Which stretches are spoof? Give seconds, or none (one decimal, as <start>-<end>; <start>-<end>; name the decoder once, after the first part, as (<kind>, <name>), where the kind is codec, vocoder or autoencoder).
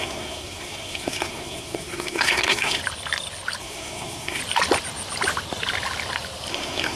0.0-2.8 (codec, SNAC); 3.6-4.4; 6.5-7.0